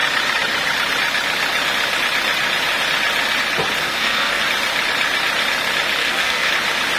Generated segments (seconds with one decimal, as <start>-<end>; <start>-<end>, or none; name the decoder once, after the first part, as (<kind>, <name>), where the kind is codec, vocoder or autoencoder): 3.8-4.4 (codec, SNAC); 6.0-6.5